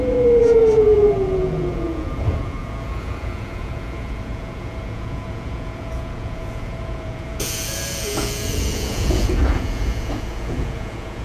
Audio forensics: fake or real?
fake